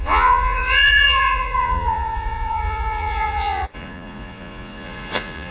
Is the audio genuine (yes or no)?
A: no